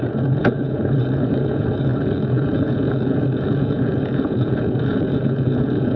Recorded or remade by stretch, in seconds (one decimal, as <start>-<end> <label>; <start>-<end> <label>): 0.0-6.0 remade